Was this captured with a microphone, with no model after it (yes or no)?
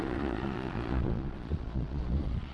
no